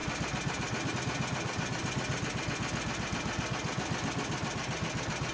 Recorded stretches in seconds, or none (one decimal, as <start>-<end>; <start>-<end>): 0.0-5.3